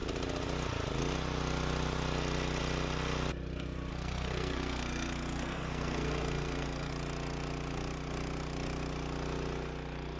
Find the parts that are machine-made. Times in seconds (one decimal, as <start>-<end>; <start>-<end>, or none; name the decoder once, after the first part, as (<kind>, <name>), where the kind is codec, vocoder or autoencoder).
3.9-6.9 (codec, SNAC)

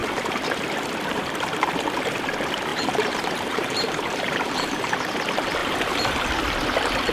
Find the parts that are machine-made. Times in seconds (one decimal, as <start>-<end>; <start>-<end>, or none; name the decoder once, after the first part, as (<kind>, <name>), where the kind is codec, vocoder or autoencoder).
0.0-2.1 (vocoder, BigVGAN v2); 2.7-5.1; 5.6-6.3

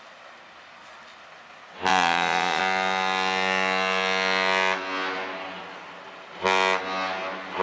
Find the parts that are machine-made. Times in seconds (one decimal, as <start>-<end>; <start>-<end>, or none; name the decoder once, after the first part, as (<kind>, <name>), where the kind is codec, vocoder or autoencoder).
1.9-2.6 (vocoder, Vocos)

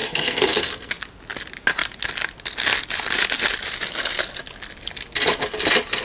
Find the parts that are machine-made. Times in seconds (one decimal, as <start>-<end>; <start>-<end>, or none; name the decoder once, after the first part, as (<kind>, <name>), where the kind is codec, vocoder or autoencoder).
0.0-0.9 (codec, SNAC)

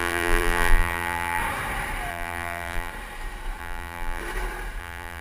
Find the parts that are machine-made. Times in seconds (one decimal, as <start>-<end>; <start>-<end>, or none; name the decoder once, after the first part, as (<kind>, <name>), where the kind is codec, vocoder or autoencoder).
0.0-1.4 (vocoder, BigVGAN v2); 2.1-2.9; 3.6-4.2; 4.8-5.2

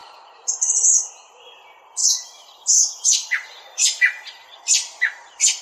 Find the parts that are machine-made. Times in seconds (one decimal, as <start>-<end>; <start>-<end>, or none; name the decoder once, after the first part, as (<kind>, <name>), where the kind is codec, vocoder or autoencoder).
0.0-1.1 (vocoder, BigVGAN v2); 2.0-5.6